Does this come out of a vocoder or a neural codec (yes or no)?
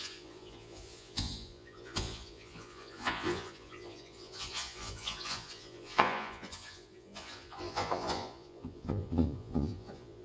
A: yes